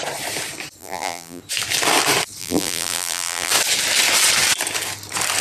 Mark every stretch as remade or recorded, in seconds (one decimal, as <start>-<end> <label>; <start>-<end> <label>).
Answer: 0.0-0.8 recorded; 0.8-1.4 remade; 1.4-2.4 recorded; 2.4-3.5 remade; 3.5-5.4 recorded